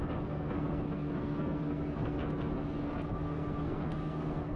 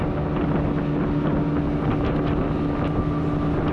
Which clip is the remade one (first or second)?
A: first